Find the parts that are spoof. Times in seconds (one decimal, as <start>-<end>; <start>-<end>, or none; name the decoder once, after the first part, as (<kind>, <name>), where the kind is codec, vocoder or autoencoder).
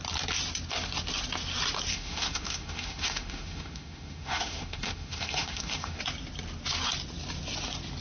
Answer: 1.9-6.0 (autoencoder, DAC-VAE)